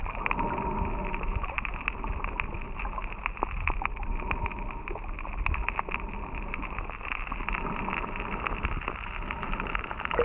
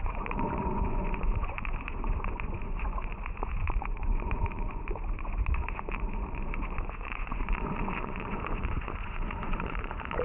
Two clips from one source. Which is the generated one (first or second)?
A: second